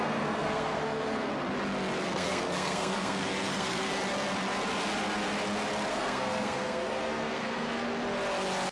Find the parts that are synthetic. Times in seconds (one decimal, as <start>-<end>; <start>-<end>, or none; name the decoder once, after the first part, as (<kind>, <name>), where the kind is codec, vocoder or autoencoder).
0.0-1.3 (codec, SNAC); 2.0-3.9; 5.9-7.9

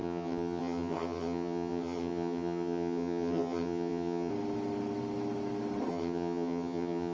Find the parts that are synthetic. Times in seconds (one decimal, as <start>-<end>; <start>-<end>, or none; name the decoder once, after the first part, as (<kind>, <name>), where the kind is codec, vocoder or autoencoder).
0.0-4.3 (vocoder, HiFi-GAN); 5.9-7.1

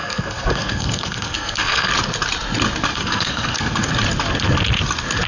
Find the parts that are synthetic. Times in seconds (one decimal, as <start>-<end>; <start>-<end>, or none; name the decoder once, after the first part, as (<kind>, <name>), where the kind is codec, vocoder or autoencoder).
0.0-1.9 (codec, SNAC); 2.9-3.9